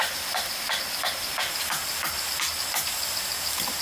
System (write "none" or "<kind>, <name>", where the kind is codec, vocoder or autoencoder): vocoder, BigVGAN v2